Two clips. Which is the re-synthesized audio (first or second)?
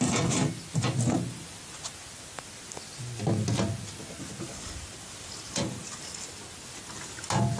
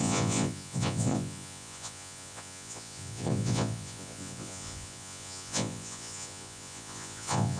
second